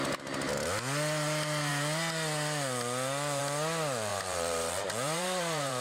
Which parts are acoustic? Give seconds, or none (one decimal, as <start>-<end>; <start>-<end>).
0.0-4.1